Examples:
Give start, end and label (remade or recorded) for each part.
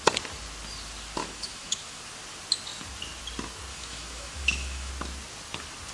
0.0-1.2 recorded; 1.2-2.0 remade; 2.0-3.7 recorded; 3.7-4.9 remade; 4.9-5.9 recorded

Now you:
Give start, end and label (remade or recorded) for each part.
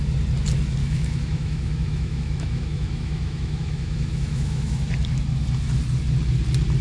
0.0-0.8 recorded; 0.8-4.9 remade; 4.9-6.8 recorded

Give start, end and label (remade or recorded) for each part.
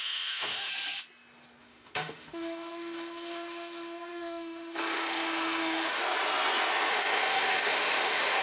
0.0-0.7 remade; 0.7-1.6 recorded; 1.6-6.0 remade; 6.0-6.9 recorded; 6.9-8.4 remade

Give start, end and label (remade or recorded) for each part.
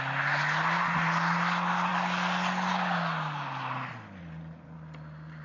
0.0-5.4 recorded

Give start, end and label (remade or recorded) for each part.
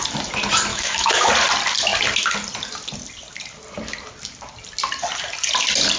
0.0-0.7 recorded; 0.7-1.3 remade; 1.3-6.0 recorded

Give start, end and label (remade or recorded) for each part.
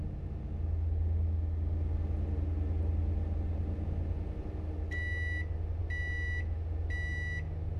0.0-7.8 recorded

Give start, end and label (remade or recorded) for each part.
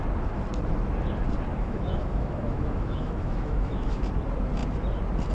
0.0-1.5 recorded; 1.5-4.0 remade; 4.0-5.3 recorded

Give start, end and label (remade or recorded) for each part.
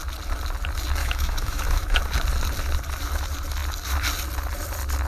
0.0-1.0 recorded; 1.0-2.0 remade; 2.0-5.1 recorded